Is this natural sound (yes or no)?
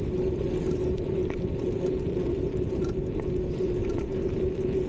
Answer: yes